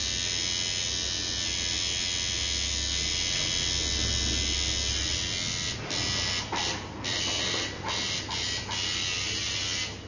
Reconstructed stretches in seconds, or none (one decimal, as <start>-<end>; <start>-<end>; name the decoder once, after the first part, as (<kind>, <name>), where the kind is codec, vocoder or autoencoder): none